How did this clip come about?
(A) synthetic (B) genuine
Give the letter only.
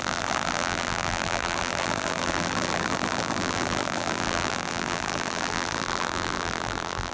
A